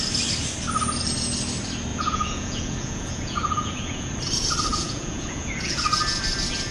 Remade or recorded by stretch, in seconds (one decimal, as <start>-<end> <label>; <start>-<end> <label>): 0.0-1.9 recorded; 1.9-4.1 remade; 4.1-4.7 recorded; 4.7-5.8 remade; 5.8-6.7 recorded